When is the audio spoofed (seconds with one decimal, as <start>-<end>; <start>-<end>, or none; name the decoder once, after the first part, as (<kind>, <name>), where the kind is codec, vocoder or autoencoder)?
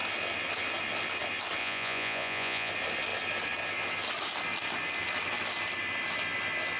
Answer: 1.6-2.7 (vocoder, Vocos)